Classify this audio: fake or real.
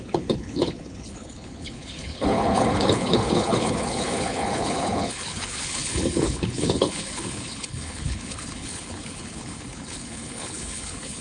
fake